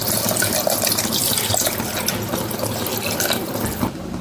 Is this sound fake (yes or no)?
no